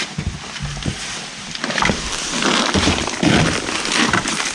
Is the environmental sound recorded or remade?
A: recorded